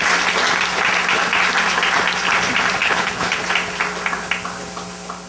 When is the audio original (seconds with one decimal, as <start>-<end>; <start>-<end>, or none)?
0.0-2.8; 3.4-5.3

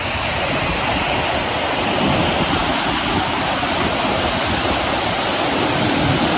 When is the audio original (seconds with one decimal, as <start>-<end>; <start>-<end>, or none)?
0.0-6.4

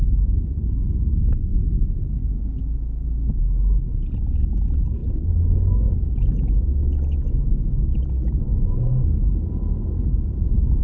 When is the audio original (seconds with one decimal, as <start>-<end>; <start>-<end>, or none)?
0.0-10.8

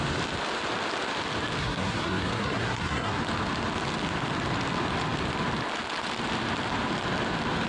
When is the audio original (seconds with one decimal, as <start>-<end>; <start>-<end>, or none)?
0.0-1.6; 3.2-7.7

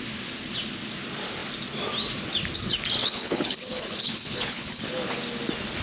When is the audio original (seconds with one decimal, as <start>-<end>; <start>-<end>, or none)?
0.0-3.0; 5.1-5.8

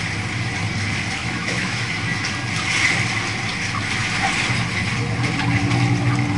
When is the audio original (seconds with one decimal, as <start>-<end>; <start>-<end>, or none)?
0.0-1.2; 1.9-6.4

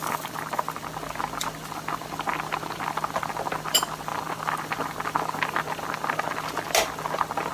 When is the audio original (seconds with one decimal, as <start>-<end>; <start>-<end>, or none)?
0.0-7.5

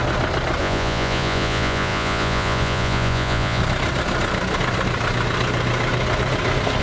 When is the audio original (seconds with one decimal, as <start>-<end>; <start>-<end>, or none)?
0.0-0.6; 3.6-6.8